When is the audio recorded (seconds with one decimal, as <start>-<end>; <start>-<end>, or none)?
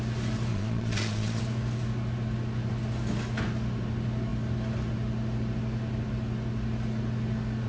0.0-0.5; 1.4-7.7